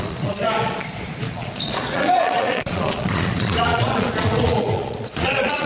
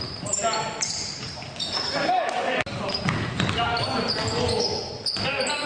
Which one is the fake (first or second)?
first